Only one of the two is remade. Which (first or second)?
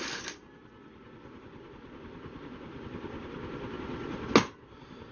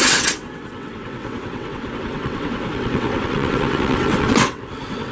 second